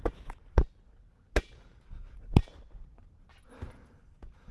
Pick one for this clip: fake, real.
real